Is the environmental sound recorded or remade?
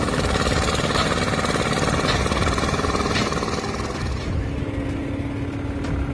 recorded